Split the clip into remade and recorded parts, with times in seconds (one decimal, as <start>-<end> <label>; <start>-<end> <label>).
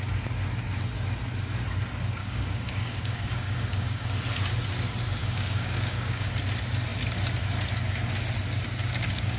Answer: 0.0-2.2 recorded; 2.2-4.1 remade; 4.1-5.2 recorded; 5.2-6.3 remade; 6.3-8.8 recorded; 8.8-9.4 remade